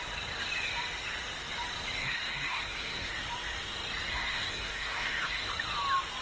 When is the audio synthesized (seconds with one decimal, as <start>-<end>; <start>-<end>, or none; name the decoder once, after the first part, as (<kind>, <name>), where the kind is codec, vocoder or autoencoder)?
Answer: 2.0-3.1 (codec, SNAC); 4.1-5.5